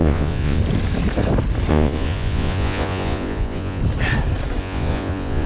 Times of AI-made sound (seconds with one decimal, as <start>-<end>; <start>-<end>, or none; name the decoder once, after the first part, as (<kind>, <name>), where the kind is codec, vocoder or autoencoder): 0.0-0.6 (vocoder, Vocos); 1.7-3.8; 4.6-5.5